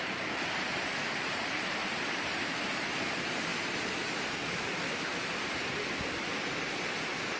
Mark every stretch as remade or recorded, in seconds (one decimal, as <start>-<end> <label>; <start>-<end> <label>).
0.0-3.5 remade; 3.5-7.0 recorded; 7.0-7.4 remade